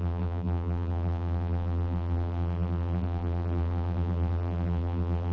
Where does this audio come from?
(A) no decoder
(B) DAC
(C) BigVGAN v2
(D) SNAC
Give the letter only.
C